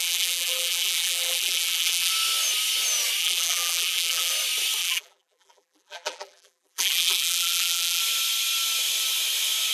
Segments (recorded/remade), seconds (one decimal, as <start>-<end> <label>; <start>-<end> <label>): 0.0-2.1 remade; 2.1-3.2 recorded; 3.2-4.3 remade; 4.3-4.8 recorded; 4.8-8.0 remade; 8.0-9.7 recorded